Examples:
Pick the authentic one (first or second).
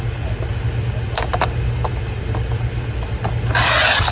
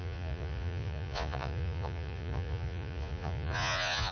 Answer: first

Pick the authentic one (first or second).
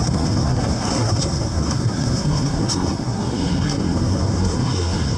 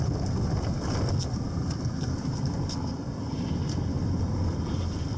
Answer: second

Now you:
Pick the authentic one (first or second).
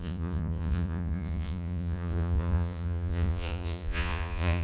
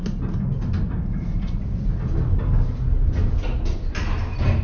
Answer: second